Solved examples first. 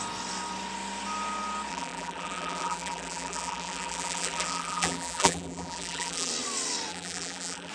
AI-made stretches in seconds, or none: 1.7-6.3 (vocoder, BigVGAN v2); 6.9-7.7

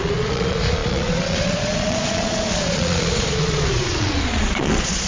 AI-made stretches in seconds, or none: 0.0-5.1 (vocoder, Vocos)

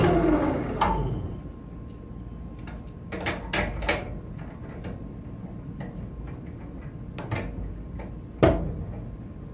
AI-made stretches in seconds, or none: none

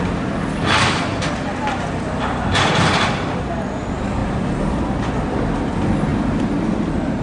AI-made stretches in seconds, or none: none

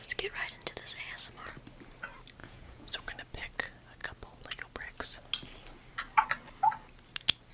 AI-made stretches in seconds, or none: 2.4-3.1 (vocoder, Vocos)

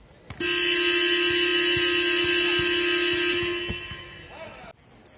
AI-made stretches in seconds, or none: none

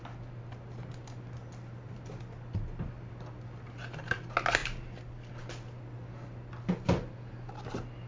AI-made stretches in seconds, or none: none